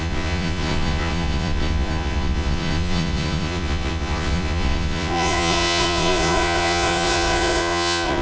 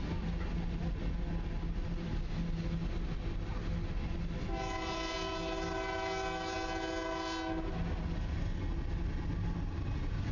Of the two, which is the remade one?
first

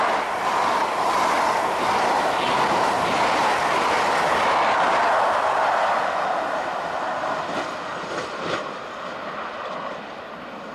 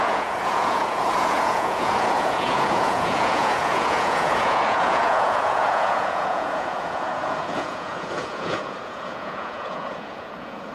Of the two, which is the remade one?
second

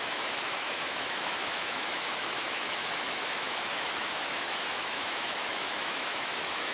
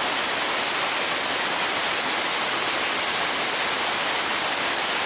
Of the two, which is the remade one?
first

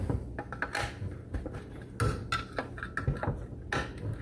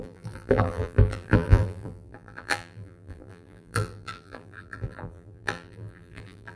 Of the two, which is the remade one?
second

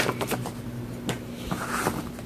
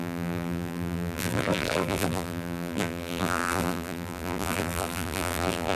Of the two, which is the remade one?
second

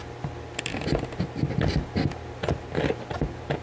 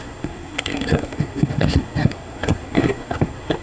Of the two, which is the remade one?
second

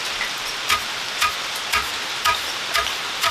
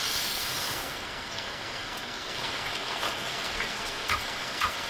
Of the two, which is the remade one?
second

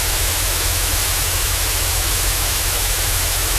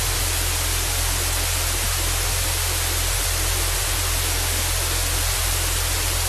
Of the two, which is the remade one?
first